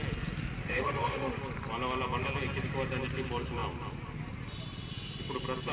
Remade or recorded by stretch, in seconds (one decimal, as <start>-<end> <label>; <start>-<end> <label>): 0.0-0.6 recorded; 0.6-1.4 remade; 1.4-5.7 recorded